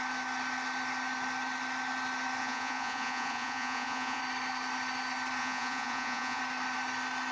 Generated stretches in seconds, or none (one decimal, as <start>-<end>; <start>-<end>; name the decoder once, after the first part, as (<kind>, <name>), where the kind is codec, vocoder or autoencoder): 2.4-4.2 (vocoder, Vocos); 5.4-6.4